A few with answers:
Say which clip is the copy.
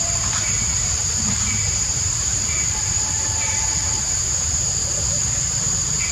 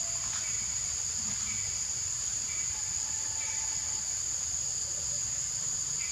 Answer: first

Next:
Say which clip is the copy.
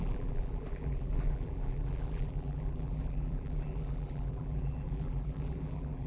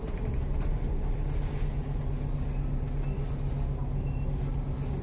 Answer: first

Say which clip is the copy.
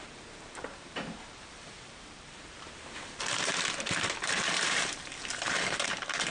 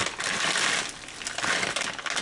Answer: first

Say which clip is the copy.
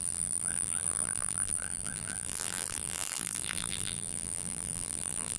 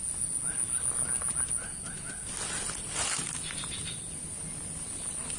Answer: first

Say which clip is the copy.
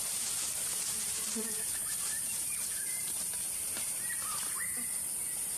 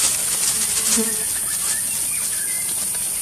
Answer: first